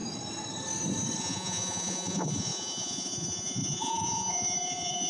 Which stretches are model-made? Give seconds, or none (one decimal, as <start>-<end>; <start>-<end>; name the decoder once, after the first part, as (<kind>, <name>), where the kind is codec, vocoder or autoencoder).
1.2-5.1 (vocoder, Vocos)